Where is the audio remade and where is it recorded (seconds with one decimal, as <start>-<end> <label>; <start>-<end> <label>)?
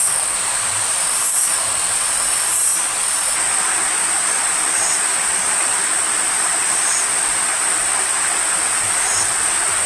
0.0-9.9 recorded